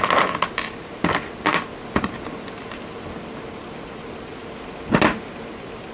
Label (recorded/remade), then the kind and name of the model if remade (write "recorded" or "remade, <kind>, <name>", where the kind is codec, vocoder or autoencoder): recorded